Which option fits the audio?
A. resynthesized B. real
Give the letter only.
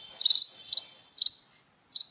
B